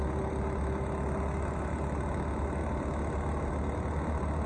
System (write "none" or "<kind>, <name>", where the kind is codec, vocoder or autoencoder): none